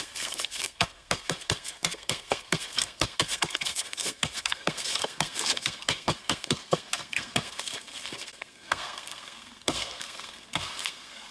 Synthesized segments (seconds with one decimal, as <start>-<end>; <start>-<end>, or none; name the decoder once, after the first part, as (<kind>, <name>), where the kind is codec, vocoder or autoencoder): 0.0-11.3 (codec, SNAC)